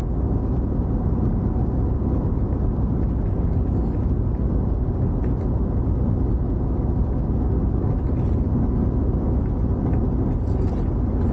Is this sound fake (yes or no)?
no